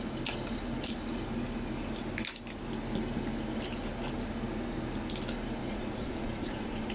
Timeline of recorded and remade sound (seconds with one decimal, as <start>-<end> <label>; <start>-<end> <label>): 0.0-5.6 recorded; 5.6-6.9 remade

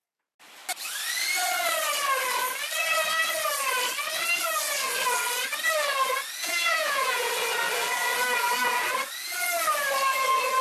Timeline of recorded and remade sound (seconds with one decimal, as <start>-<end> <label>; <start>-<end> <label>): 0.0-6.4 recorded; 6.4-7.3 remade; 7.3-10.6 recorded

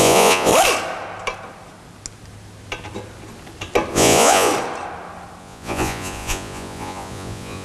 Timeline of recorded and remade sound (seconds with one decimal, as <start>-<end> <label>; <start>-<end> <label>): 0.0-0.5 remade; 0.5-3.9 recorded; 3.9-4.5 remade; 4.5-5.4 recorded; 5.4-7.6 remade

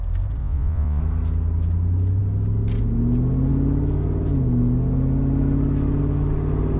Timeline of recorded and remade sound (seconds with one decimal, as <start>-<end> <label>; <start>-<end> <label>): 0.0-0.4 recorded; 0.4-1.0 remade; 1.0-6.8 recorded

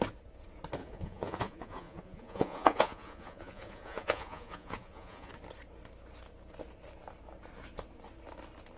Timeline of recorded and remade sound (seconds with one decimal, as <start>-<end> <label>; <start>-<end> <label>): 0.0-0.8 recorded; 0.8-5.3 remade; 5.3-8.8 recorded